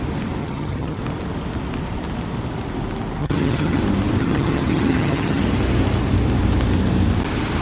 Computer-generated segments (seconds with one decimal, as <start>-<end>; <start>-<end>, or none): 0.4-1.0; 3.2-3.8; 4.2-5.4

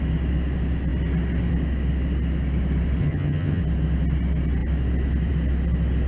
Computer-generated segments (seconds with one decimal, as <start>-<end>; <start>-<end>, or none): 3.0-3.6

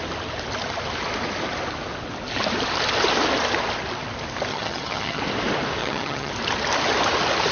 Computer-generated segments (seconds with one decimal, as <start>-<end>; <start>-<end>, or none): 4.5-5.2; 5.8-6.3